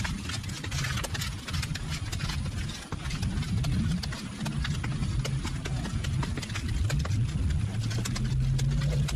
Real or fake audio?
real